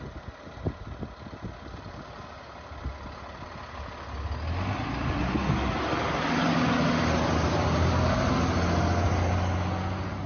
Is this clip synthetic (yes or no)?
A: no